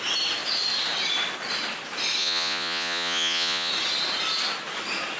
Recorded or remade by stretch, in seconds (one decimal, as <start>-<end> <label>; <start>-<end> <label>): 0.0-2.2 recorded; 2.2-3.7 remade; 3.7-5.2 recorded